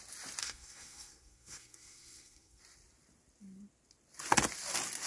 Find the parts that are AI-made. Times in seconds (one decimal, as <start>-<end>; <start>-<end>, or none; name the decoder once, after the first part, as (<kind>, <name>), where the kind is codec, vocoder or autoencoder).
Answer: 0.4-2.6 (codec, SNAC)